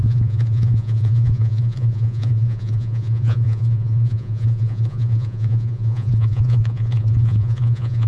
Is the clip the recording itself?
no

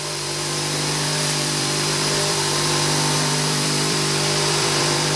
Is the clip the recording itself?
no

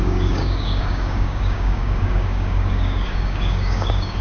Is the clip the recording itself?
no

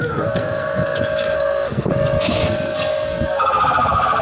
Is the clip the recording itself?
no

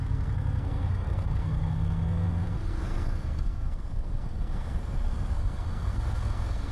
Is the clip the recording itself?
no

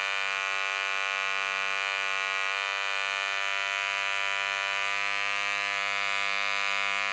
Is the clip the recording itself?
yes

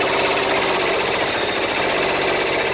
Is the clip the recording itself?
yes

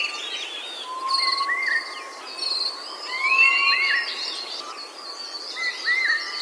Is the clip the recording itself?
yes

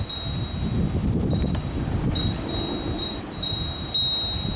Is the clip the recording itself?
yes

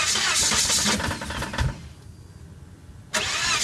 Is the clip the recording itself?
yes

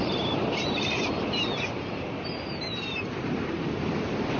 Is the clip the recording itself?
no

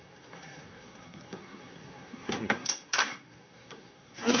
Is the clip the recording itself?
no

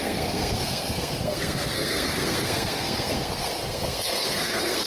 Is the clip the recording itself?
no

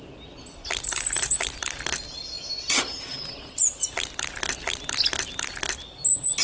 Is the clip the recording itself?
yes